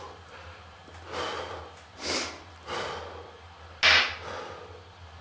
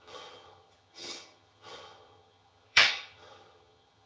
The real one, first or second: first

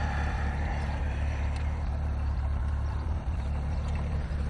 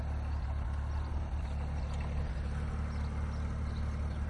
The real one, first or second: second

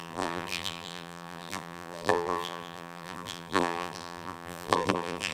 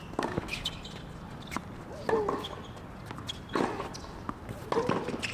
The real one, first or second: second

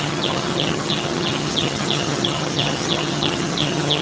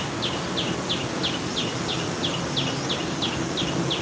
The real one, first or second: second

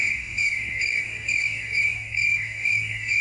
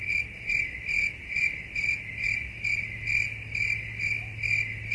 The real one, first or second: second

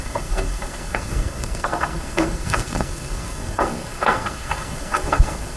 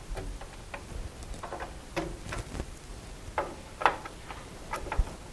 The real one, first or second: second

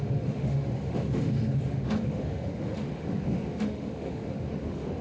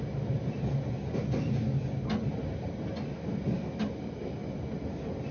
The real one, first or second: second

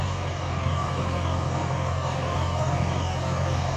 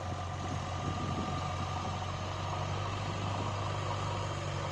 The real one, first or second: second